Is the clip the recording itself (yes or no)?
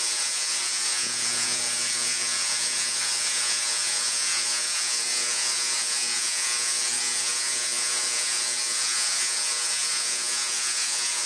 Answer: no